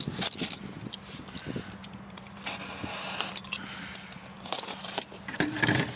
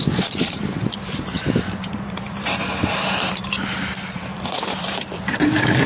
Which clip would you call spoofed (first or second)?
second